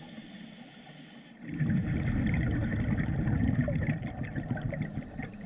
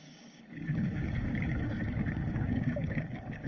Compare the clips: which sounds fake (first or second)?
second